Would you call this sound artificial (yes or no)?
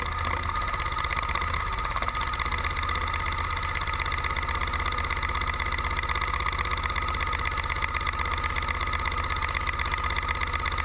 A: no